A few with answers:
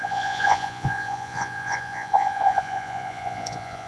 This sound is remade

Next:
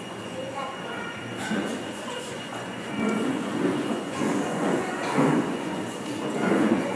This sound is remade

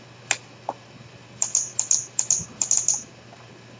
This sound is recorded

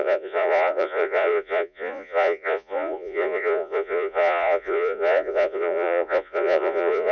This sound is remade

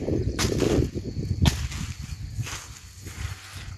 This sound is recorded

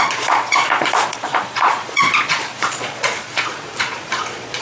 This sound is remade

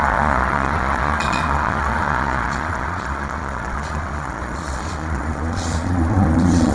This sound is remade